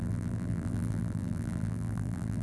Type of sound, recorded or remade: remade